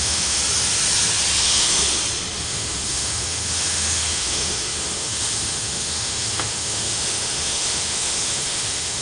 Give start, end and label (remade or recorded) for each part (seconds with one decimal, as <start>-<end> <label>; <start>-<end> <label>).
0.0-0.4 remade; 0.4-1.4 recorded; 1.4-1.8 remade; 1.8-2.4 recorded; 2.4-9.0 remade